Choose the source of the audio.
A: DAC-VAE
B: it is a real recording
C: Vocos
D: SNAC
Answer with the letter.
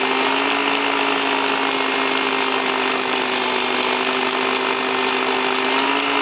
B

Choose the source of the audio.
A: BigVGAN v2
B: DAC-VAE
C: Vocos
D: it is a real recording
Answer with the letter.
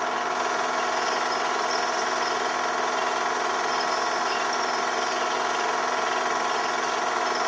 D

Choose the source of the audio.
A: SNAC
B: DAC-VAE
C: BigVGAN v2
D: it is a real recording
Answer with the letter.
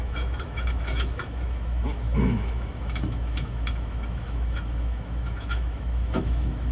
B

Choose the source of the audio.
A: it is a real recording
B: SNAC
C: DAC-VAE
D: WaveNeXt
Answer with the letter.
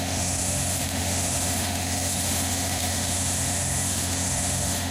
C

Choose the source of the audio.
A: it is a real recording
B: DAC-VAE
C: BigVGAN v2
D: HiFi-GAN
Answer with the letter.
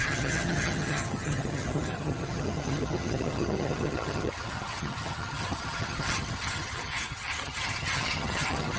D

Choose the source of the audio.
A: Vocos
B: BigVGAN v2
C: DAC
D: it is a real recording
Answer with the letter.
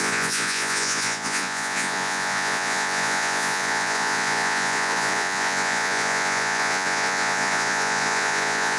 A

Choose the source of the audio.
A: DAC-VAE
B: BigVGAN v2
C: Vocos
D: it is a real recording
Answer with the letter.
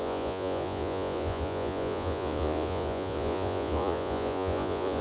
C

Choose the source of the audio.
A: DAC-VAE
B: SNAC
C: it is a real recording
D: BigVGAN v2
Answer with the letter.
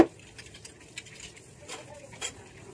C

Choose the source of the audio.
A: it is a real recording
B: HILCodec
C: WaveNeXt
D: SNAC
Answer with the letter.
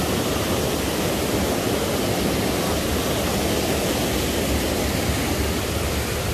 A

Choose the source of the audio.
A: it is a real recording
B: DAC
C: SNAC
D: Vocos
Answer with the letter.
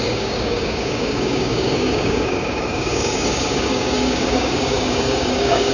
B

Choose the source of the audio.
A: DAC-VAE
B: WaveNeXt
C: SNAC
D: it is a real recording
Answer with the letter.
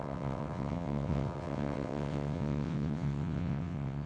B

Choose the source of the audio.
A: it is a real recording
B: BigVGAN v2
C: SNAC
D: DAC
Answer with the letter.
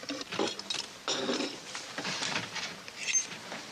B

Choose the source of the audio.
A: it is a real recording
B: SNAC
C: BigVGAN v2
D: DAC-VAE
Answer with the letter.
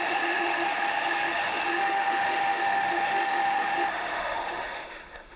D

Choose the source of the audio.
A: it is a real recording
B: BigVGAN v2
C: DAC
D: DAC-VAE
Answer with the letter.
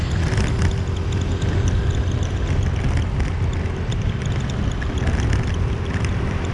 A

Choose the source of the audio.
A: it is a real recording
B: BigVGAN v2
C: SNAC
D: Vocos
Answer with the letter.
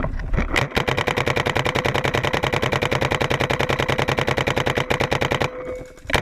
A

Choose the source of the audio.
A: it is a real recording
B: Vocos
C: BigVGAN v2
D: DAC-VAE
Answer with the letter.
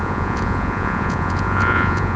B